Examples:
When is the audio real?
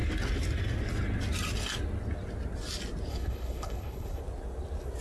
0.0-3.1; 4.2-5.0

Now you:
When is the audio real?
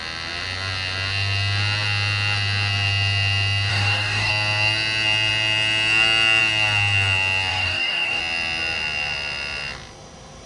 0.0-3.7; 4.3-7.5; 8.2-10.5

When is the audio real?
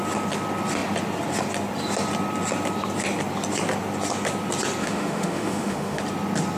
0.0-4.8; 6.0-6.6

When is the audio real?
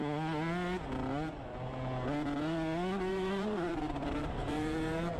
0.0-3.1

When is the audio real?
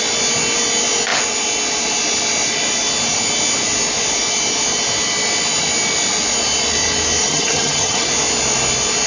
0.0-7.2; 8.1-9.1